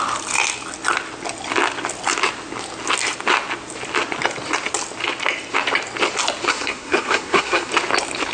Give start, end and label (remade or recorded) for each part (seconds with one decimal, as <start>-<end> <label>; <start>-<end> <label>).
0.0-6.5 recorded; 6.5-7.7 remade; 7.7-8.3 recorded